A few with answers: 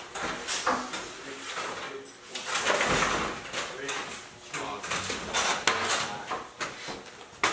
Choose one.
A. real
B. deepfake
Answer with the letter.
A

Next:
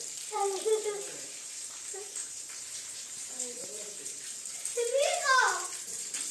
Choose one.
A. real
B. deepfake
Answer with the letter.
B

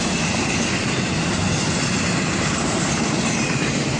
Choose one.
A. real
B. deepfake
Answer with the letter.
B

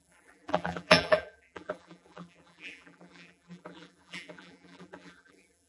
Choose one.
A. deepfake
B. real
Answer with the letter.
A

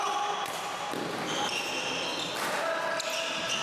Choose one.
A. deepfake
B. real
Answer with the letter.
B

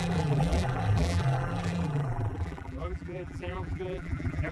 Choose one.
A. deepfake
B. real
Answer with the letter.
A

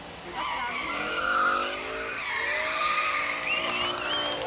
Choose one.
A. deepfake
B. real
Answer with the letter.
B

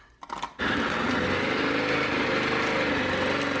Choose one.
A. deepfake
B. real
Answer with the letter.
B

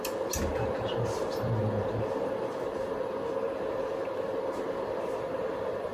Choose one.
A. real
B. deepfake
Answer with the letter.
A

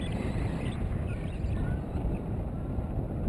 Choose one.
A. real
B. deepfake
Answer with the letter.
B